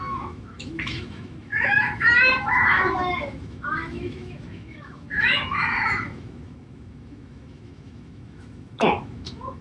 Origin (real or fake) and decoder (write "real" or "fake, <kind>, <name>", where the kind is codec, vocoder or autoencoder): fake, autoencoder, DAC-VAE